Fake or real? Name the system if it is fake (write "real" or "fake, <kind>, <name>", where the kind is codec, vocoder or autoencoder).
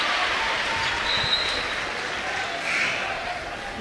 real